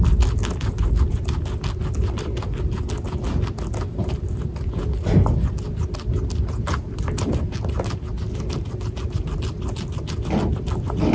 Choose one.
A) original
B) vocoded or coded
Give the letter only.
A